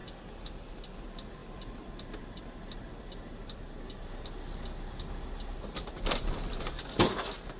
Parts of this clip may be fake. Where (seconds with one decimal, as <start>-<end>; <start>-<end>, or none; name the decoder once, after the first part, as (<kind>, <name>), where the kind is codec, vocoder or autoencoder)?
none